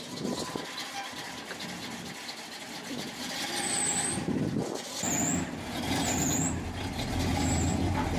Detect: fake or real real